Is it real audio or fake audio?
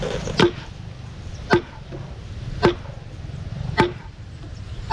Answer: real